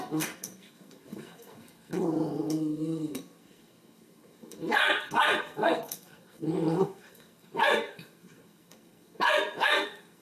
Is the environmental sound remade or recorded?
remade